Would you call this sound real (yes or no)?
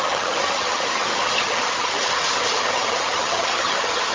no